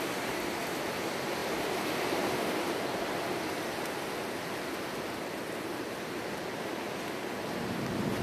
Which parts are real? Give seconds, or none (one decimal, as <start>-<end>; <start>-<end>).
0.0-8.2